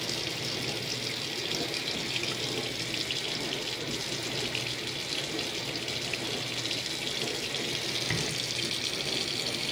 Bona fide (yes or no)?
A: yes